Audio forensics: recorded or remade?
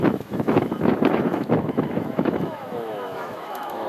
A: remade